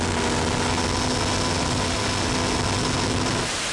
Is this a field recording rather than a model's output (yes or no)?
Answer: yes